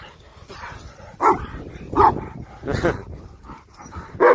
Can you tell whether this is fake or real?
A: real